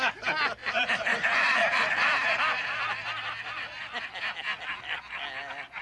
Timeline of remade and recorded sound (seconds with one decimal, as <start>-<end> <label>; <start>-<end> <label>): 0.0-0.6 recorded; 0.6-3.8 remade; 3.8-5.8 recorded